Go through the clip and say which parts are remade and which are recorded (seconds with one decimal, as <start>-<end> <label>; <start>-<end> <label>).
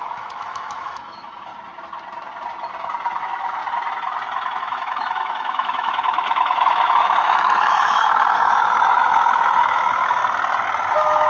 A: 0.0-1.5 remade; 1.5-3.2 recorded; 3.2-3.6 remade; 3.6-4.6 recorded; 4.6-10.2 remade; 10.2-10.9 recorded; 10.9-11.3 remade